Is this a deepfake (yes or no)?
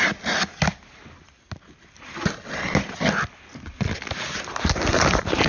no